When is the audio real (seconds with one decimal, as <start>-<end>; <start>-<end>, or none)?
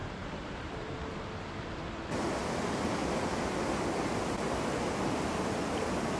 1.1-6.2